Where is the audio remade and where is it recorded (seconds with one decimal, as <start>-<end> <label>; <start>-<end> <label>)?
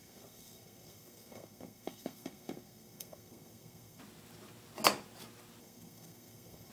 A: 0.0-4.0 remade; 4.0-5.6 recorded; 5.6-6.7 remade